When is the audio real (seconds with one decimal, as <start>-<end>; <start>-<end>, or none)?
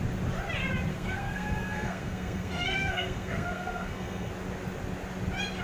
0.0-0.9; 4.3-5.6